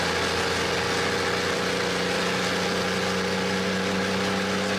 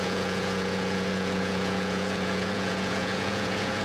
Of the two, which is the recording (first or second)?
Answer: first